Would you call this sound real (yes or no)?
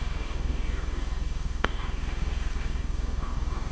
no